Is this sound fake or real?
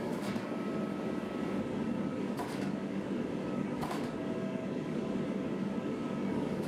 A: fake